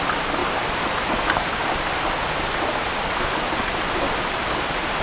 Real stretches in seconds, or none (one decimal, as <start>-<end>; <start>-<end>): 0.0-5.0